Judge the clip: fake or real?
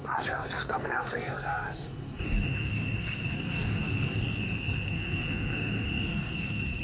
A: fake